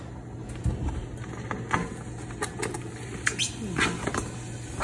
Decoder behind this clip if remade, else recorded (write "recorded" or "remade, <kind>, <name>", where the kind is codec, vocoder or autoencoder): recorded